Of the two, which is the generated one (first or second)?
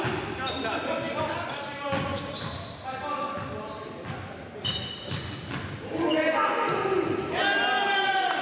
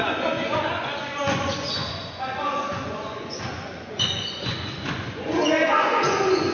second